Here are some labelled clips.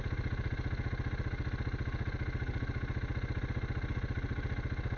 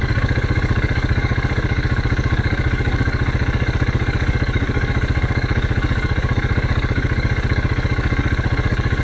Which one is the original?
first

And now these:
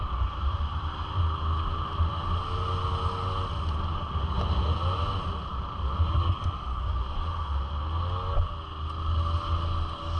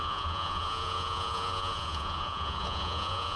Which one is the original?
first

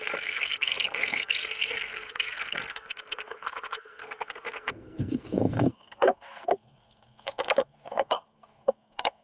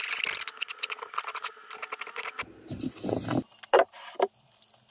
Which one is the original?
second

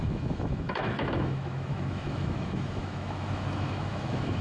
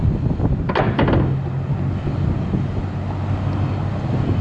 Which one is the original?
second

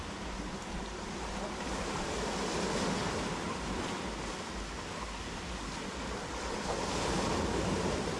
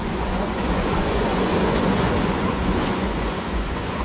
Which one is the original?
first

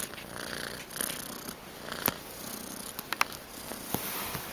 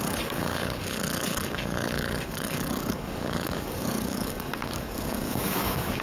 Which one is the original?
first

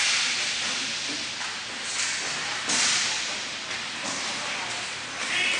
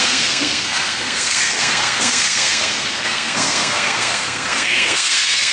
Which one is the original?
first